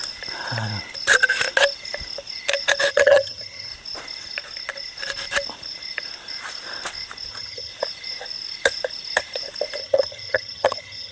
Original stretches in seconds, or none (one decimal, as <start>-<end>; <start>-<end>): 0.0-2.9; 3.7-7.3; 7.7-9.8